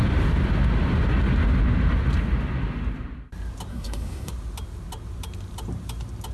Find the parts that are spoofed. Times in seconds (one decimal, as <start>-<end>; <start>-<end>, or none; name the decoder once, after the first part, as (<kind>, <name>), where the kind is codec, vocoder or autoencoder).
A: 3.7-4.3 (codec, SNAC)